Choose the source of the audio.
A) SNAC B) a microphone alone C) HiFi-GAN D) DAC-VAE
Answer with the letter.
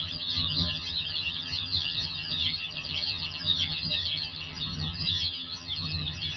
C